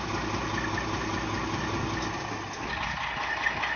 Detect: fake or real real